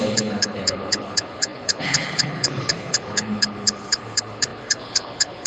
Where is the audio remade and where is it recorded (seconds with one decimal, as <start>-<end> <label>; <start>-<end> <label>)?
0.0-5.5 remade